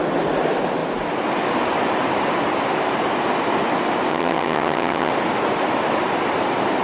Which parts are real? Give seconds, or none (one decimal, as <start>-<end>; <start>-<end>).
0.0-4.1; 5.1-6.8